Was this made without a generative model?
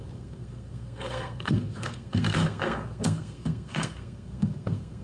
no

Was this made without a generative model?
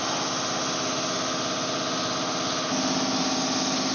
yes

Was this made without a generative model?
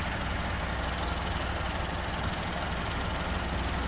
yes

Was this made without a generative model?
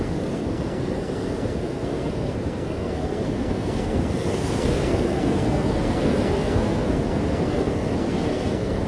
no